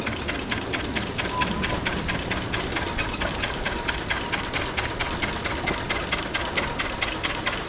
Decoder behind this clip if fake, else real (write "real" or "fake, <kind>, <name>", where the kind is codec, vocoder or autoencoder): real